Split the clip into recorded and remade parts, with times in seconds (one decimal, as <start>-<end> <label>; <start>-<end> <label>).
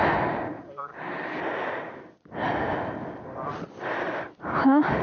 0.0-5.0 recorded